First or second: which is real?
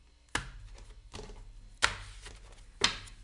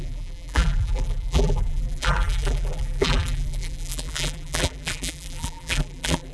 first